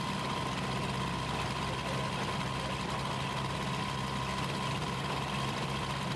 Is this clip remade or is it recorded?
recorded